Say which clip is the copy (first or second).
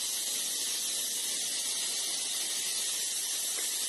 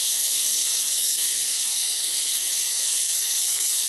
second